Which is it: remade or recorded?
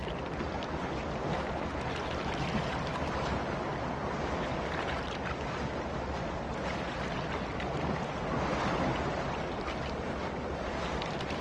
recorded